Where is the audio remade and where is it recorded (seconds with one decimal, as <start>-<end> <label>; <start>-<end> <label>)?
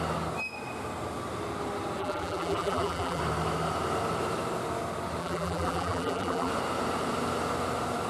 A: 0.0-2.0 recorded; 2.0-3.2 remade; 3.2-5.2 recorded; 5.2-6.5 remade; 6.5-8.1 recorded